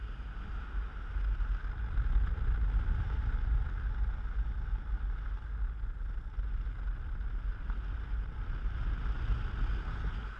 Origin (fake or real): real